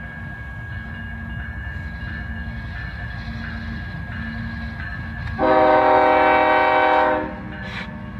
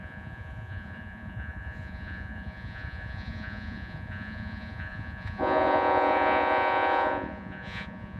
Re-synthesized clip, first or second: second